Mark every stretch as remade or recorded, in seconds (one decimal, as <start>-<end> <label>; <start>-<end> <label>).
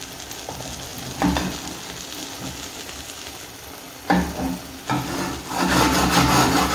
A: 0.0-6.7 recorded